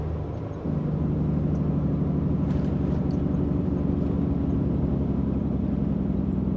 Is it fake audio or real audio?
real